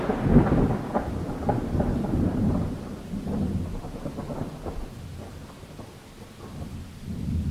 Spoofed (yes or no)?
yes